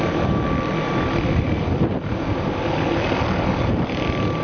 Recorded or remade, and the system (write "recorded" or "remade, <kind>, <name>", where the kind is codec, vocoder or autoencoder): recorded